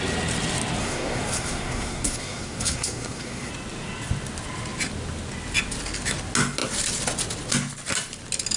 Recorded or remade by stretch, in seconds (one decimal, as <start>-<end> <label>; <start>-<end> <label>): 0.0-0.8 recorded; 0.8-3.5 remade; 3.5-8.6 recorded